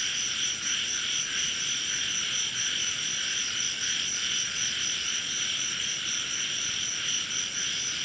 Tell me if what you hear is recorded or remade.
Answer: recorded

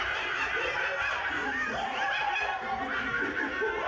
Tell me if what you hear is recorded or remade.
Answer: recorded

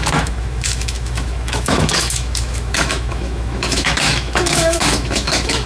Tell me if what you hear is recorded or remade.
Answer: remade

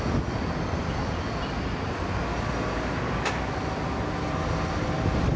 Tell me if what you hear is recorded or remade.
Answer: recorded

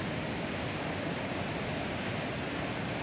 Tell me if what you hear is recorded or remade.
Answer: recorded